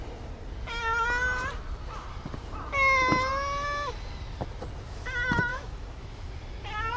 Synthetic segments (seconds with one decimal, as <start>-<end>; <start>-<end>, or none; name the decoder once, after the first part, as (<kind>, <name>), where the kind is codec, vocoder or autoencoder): 5.5-6.3 (autoencoder, DAC-VAE)